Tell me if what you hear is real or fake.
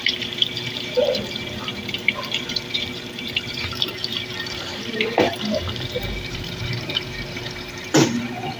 fake